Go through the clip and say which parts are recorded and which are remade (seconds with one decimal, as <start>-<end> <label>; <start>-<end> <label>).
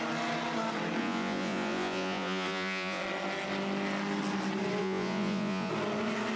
0.0-1.0 recorded; 1.0-3.0 remade; 3.0-4.8 recorded; 4.8-5.7 remade; 5.7-6.4 recorded